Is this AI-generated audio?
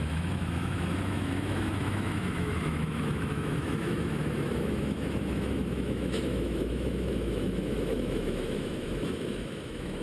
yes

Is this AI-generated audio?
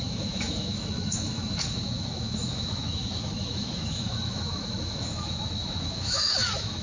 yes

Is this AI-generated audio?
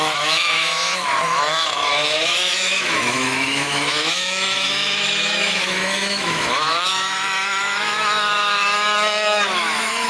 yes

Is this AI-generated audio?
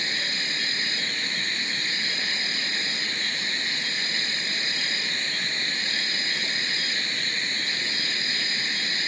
no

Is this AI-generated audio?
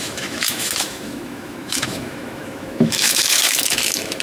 yes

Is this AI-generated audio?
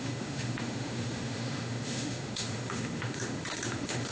yes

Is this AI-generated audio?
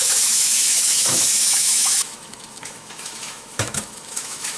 yes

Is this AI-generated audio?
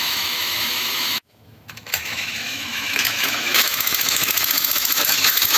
yes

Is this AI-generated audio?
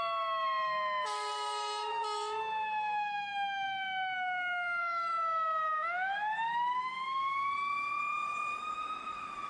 yes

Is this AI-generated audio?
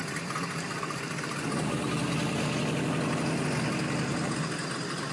no